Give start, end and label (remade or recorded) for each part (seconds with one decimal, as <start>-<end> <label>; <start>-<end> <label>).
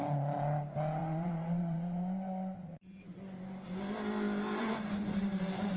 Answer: 0.0-1.0 recorded; 1.0-3.2 remade; 3.2-4.6 recorded; 4.6-5.3 remade; 5.3-5.8 recorded